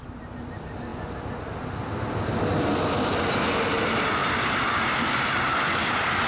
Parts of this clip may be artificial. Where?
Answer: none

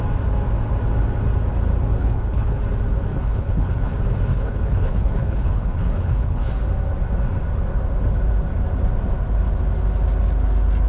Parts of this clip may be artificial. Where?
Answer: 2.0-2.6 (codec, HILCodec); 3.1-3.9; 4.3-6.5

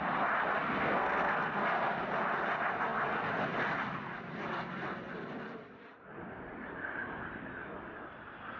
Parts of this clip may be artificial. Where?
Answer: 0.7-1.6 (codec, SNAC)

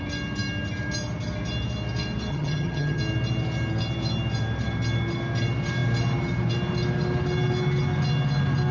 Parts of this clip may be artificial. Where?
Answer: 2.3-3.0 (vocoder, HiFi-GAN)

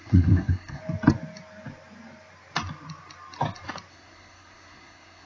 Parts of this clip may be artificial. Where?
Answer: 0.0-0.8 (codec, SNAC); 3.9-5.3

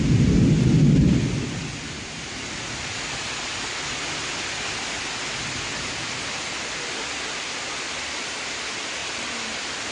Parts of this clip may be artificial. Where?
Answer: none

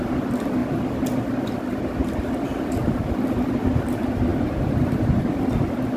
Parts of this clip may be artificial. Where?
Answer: 0.6-1.4 (vocoder, BigVGAN v2); 2.5-3.6

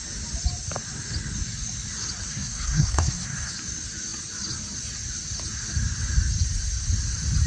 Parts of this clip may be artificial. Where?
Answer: 2.3-3.5 (codec, SNAC)